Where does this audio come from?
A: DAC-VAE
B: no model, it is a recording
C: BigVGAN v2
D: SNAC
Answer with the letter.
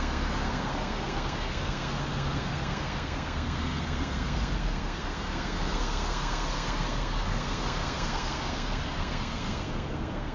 D